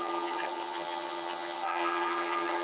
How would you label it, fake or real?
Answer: fake